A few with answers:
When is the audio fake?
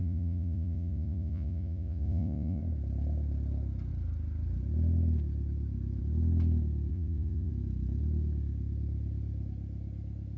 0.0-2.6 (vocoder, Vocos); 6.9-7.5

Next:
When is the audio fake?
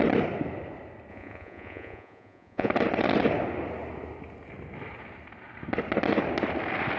1.1-2.7 (vocoder, Vocos)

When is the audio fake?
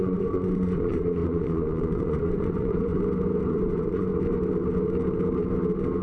0.0-2.9 (vocoder, Vocos); 3.5-4.1